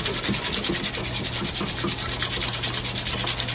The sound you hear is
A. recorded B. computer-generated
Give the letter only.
A